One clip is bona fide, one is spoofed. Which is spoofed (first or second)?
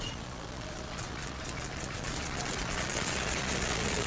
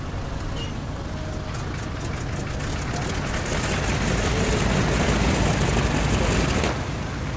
first